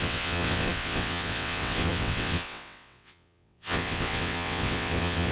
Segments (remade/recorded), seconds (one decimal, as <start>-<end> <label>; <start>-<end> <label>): 0.0-5.3 remade